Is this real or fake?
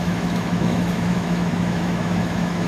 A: fake